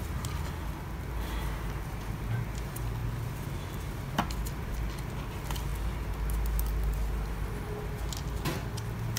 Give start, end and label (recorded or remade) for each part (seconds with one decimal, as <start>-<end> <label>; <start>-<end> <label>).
0.0-9.2 recorded